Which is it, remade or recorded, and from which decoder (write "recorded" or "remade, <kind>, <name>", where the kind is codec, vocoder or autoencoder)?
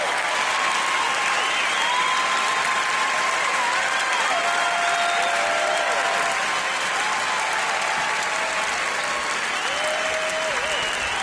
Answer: recorded